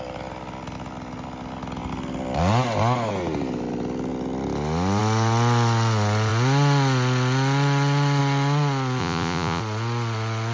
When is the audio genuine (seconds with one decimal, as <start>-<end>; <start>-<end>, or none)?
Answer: 0.0-9.0; 9.6-10.5